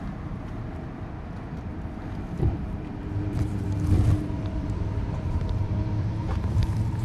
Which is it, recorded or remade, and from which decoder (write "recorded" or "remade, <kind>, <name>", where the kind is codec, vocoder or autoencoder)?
remade, vocoder, BigVGAN v2